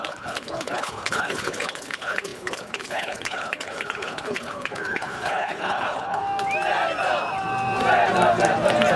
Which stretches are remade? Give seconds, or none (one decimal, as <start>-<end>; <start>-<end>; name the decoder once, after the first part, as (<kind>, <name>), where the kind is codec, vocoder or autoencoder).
0.0-6.2 (codec, HILCodec)